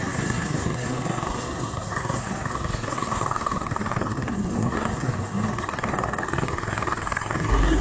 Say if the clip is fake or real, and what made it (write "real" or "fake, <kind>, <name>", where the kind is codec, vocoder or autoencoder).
fake, codec, SNAC